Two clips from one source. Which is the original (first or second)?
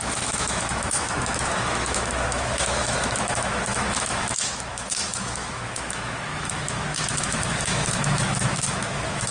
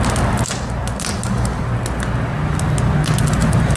second